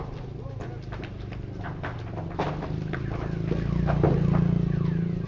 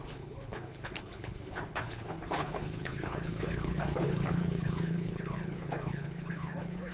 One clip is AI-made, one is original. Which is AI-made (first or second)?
second